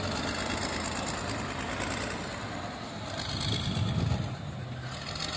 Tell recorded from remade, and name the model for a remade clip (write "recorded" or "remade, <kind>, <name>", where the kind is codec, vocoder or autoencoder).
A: recorded